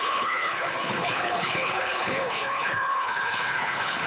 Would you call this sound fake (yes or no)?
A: yes